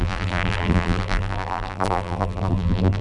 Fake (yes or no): yes